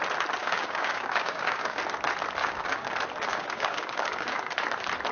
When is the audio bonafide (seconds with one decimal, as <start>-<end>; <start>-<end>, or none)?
0.0-0.4; 1.8-2.4; 2.9-3.3; 4.5-5.1